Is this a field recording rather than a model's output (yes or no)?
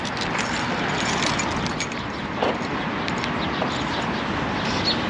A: yes